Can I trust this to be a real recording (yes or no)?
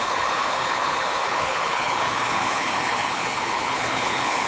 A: no